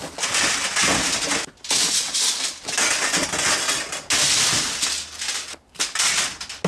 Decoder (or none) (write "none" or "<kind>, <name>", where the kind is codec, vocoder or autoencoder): none